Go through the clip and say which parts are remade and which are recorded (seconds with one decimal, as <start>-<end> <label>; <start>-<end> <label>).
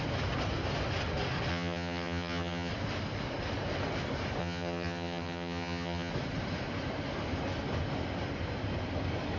0.0-1.5 recorded; 1.5-2.7 remade; 2.7-4.4 recorded; 4.4-6.1 remade; 6.1-9.4 recorded